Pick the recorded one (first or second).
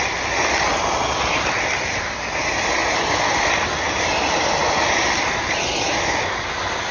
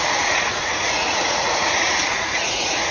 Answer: first